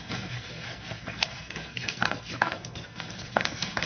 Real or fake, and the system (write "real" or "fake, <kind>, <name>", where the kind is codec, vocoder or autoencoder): fake, codec, SNAC